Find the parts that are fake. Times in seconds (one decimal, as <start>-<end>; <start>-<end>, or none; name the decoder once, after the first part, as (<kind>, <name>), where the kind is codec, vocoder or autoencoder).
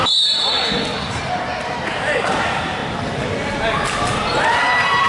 none